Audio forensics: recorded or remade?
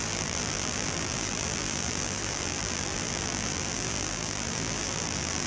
remade